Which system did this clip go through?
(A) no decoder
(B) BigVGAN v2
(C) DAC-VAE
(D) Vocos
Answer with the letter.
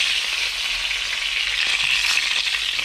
A